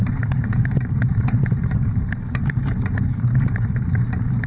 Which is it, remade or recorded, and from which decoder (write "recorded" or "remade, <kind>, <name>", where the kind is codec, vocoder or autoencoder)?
remade, vocoder, BigVGAN v2